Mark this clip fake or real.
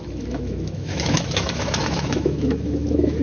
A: fake